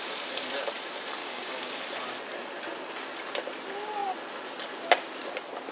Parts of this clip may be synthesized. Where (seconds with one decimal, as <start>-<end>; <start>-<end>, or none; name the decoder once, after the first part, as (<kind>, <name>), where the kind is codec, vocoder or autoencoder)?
1.2-1.7 (codec, DAC)